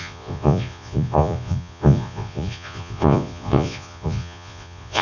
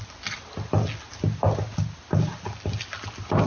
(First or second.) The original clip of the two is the second